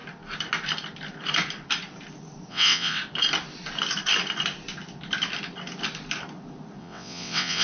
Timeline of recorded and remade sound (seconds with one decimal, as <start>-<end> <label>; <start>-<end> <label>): 0.0-2.5 recorded; 2.5-3.0 remade; 3.0-6.8 recorded; 6.8-7.6 remade

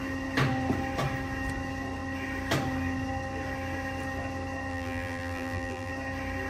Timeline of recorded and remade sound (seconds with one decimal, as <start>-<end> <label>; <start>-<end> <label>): 0.0-4.7 recorded; 4.7-5.9 remade; 5.9-6.5 recorded

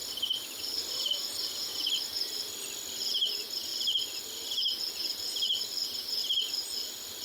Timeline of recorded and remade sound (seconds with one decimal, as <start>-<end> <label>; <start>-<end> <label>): 0.0-7.2 recorded

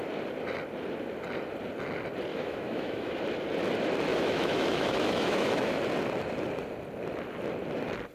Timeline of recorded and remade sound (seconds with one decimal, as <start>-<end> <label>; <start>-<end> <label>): 0.0-2.3 recorded; 2.3-3.2 remade; 3.2-4.1 recorded; 4.1-5.8 remade; 5.8-8.1 recorded

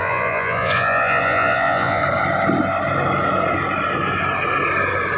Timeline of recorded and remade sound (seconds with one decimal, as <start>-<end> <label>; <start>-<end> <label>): 0.0-2.0 remade; 2.0-5.2 recorded